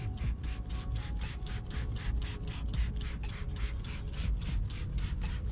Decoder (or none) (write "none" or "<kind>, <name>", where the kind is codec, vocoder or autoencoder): vocoder, BigVGAN v2